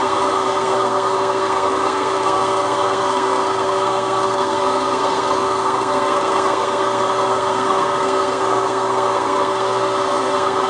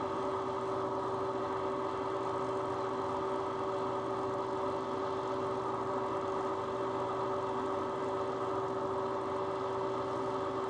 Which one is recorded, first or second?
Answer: second